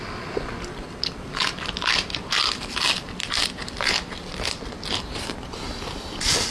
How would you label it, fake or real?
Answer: real